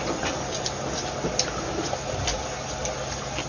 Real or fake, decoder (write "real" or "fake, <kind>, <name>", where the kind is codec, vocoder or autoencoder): real